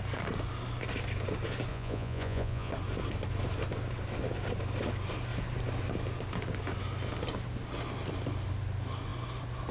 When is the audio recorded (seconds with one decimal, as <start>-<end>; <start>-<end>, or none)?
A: 0.0-1.7; 2.7-9.7